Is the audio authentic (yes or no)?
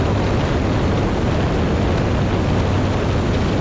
yes